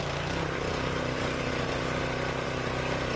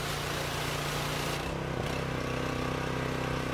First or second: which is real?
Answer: second